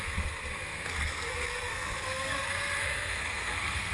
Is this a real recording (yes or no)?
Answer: no